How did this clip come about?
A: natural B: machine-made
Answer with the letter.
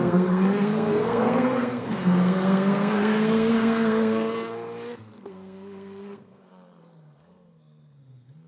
B